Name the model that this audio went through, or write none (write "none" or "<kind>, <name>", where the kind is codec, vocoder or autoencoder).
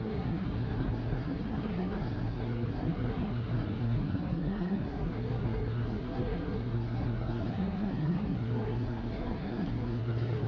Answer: codec, SNAC